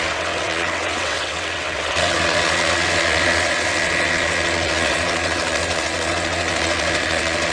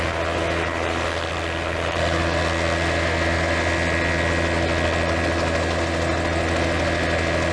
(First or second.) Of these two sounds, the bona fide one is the second